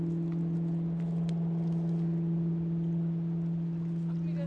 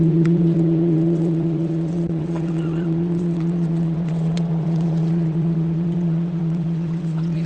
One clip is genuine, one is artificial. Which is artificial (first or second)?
second